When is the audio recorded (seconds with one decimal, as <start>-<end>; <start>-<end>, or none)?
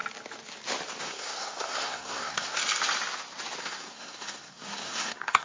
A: 0.0-1.0; 2.6-3.6